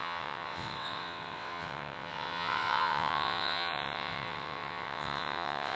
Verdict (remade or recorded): remade